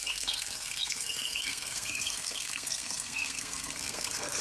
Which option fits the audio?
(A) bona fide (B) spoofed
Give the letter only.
B